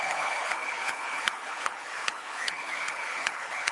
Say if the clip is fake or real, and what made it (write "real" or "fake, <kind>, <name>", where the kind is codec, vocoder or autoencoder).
fake, codec, HILCodec